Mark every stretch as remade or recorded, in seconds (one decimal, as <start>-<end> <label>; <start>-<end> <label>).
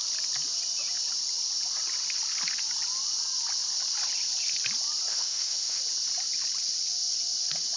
0.0-5.1 recorded; 5.1-5.8 remade; 5.8-7.8 recorded